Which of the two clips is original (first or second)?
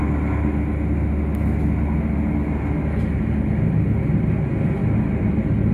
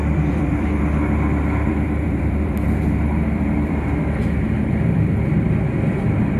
first